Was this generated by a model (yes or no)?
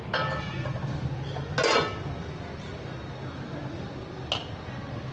no